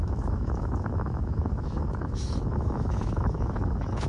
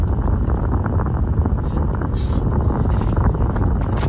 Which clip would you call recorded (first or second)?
second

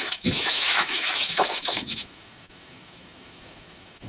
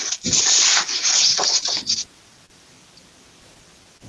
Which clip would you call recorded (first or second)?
second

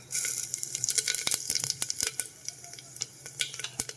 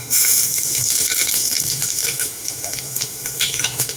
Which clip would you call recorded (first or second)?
first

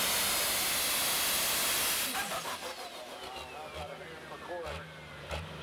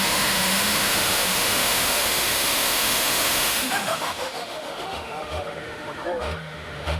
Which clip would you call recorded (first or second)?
first